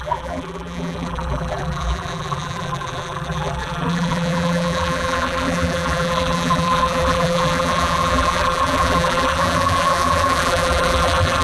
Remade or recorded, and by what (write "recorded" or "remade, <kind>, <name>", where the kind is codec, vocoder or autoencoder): remade, vocoder, BigVGAN v2